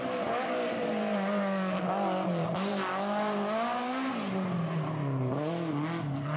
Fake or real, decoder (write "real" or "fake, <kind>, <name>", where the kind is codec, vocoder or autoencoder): real